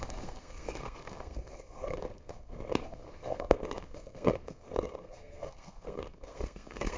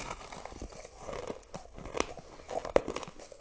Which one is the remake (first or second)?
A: first